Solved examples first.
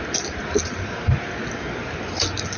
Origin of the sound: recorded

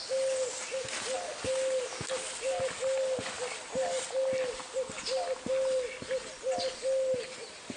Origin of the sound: recorded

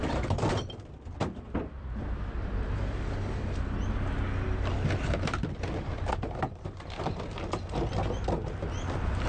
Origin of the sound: recorded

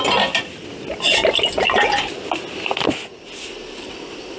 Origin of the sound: recorded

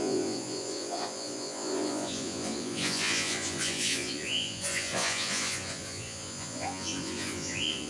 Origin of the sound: remade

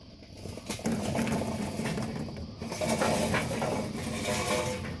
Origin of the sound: recorded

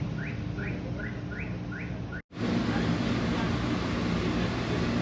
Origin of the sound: recorded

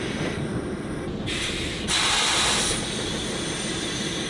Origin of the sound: recorded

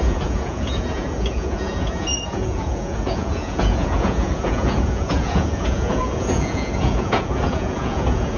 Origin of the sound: remade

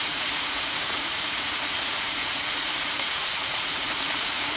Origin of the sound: remade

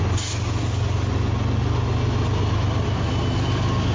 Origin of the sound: recorded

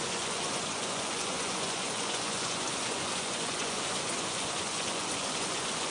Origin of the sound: remade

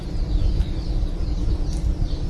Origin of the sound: recorded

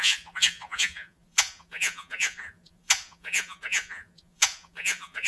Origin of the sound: remade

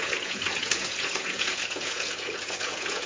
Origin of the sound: remade